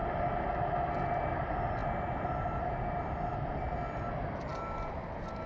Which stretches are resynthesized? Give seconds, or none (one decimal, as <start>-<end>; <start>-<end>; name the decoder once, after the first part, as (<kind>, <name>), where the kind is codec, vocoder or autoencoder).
none